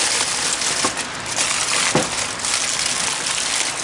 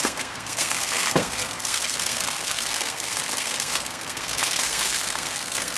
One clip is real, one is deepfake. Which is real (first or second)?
first